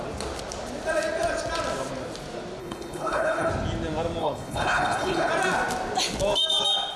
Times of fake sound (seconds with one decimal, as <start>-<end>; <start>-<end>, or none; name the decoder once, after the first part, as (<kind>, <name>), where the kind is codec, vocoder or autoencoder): 2.6-3.5 (codec, HILCodec); 4.2-5.3